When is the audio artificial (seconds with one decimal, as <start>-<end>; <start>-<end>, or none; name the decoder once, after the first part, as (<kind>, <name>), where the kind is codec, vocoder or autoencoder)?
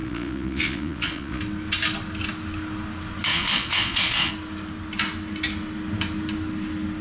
0.0-1.4 (vocoder, Vocos); 3.3-4.3